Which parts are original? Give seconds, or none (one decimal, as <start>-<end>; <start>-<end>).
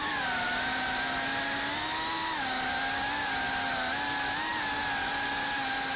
0.0-6.0